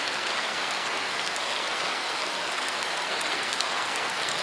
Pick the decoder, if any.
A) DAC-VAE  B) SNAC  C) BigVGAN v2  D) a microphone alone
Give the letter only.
B